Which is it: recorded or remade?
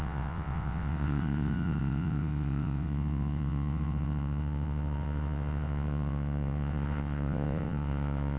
remade